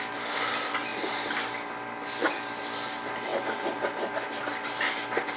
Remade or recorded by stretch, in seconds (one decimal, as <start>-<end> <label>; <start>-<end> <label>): 0.0-5.4 recorded